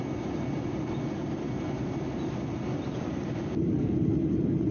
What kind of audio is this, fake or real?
real